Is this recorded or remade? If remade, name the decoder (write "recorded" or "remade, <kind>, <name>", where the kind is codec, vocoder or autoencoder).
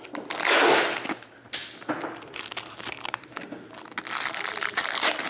recorded